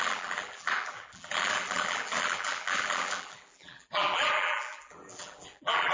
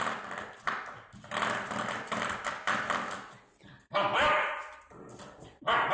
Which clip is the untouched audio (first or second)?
second